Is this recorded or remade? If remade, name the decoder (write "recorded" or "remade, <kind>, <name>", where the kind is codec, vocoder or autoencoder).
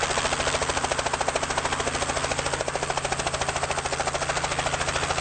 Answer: recorded